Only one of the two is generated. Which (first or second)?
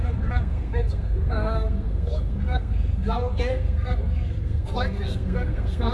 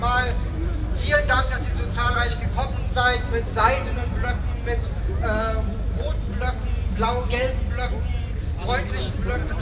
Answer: first